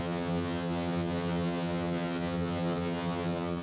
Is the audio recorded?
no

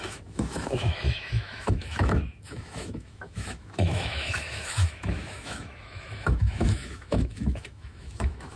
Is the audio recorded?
no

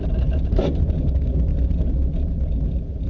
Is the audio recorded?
yes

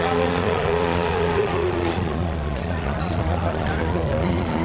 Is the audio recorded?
no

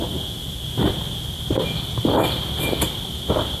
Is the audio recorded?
yes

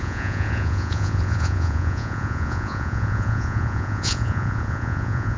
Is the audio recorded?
no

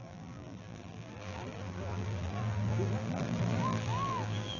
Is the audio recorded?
no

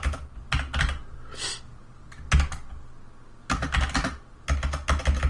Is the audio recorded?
yes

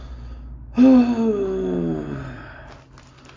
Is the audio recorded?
yes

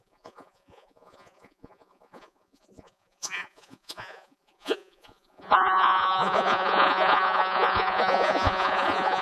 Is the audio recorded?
no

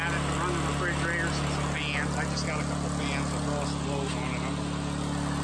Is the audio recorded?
yes